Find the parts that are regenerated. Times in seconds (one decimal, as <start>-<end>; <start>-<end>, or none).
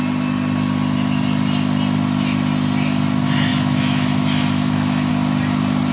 3.5-5.1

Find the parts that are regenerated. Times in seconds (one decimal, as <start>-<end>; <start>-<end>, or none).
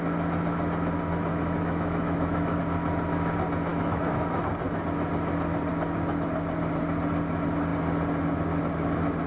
1.3-2.6; 3.7-4.4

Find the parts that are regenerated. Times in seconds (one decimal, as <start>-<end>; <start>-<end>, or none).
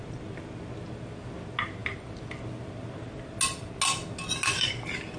none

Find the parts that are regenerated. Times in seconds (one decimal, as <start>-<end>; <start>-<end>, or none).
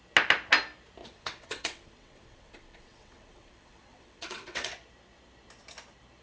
1.0-4.7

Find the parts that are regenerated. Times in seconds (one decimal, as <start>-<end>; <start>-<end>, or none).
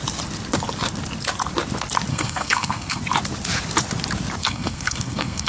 2.1-3.0; 4.4-5.5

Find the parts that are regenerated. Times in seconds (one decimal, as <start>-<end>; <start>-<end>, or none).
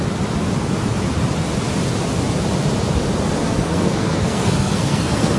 3.4-5.4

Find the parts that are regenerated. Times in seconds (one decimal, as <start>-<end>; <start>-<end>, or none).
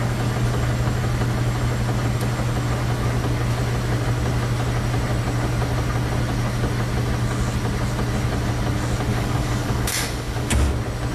9.1-10.7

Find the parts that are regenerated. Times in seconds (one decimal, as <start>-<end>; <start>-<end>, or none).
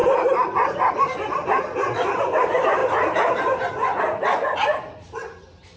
none